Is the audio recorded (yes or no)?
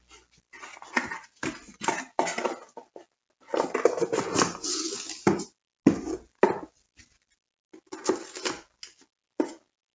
yes